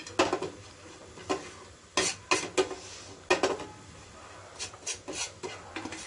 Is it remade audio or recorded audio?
recorded